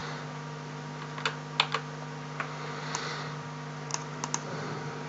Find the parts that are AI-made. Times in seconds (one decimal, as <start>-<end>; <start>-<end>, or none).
none